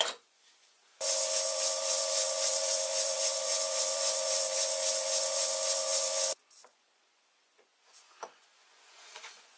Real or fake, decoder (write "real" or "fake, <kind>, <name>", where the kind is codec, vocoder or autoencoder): fake, vocoder, Vocos